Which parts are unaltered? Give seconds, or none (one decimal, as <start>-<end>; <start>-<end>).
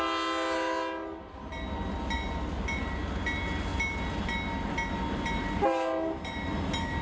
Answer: 0.0-7.0